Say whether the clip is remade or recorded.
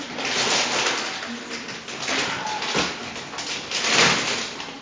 recorded